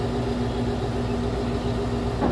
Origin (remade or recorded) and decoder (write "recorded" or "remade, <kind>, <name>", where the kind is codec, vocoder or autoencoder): recorded